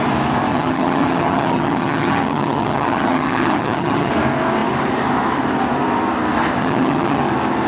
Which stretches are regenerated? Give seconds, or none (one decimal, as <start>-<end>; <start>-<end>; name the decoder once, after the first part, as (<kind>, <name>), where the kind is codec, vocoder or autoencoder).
0.5-4.1 (vocoder, HiFi-GAN); 6.6-7.2